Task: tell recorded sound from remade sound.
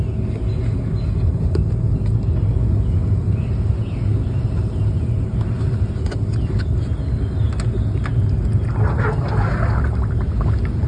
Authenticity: recorded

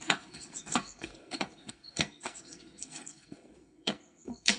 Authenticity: remade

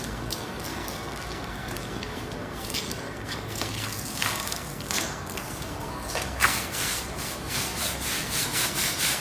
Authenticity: remade